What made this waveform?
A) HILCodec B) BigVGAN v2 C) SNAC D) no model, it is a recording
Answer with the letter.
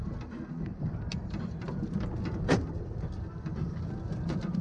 D